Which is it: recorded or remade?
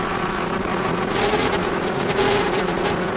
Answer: remade